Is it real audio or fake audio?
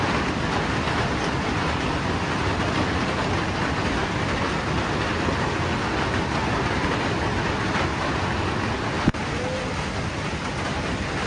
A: real